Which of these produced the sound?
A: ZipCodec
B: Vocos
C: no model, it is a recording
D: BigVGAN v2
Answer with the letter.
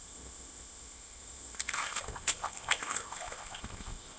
A